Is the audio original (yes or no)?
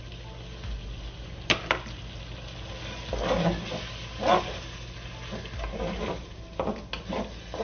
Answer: yes